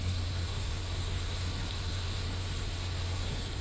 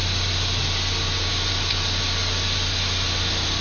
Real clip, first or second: second